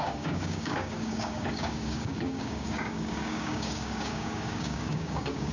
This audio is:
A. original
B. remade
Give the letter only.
B